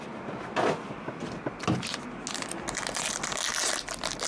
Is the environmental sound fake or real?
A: real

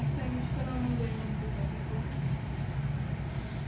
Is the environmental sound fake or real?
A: real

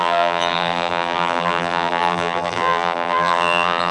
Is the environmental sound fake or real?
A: fake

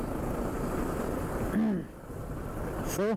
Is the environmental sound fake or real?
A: fake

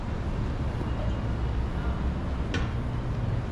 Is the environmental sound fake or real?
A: real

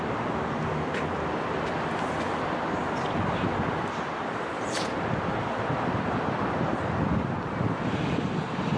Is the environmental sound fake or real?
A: fake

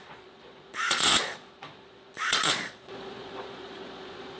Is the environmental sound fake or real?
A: fake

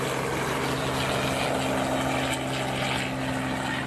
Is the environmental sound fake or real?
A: real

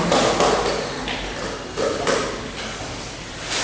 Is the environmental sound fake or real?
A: real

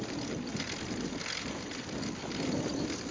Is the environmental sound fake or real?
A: real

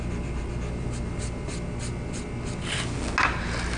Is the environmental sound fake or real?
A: real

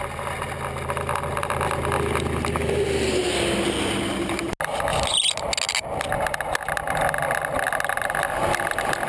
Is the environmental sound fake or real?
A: real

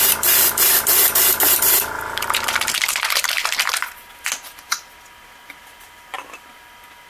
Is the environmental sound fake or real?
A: real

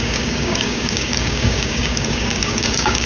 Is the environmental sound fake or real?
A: fake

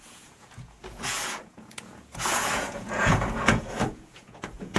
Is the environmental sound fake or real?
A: fake